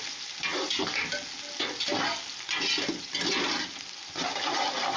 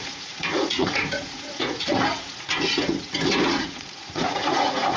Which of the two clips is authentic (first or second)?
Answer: first